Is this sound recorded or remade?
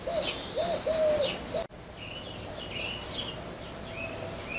recorded